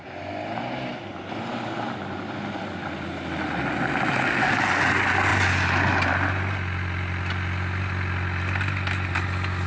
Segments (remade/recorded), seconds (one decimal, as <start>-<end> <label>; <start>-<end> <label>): 0.0-9.7 recorded

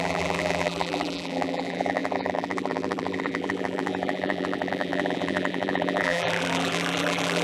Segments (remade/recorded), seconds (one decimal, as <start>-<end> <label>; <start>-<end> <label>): 0.0-7.4 remade

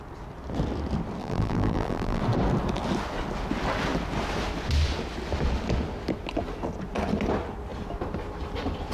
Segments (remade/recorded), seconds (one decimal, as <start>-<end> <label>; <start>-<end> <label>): 0.0-1.2 recorded; 1.2-2.2 remade; 2.2-8.9 recorded

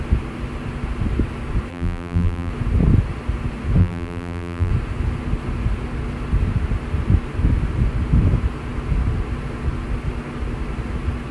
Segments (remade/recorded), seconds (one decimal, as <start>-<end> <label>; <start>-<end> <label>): 0.0-1.7 recorded; 1.7-2.5 remade; 2.5-3.8 recorded; 3.8-4.7 remade; 4.7-11.3 recorded

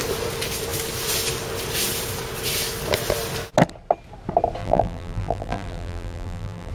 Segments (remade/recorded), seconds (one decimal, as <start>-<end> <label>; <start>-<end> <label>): 0.0-4.6 recorded; 4.6-6.7 remade

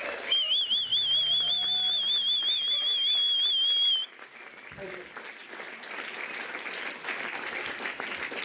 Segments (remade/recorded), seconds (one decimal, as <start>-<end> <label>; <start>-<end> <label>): 0.0-4.0 recorded; 4.0-4.9 remade; 4.9-5.4 recorded; 5.4-6.5 remade; 6.5-8.4 recorded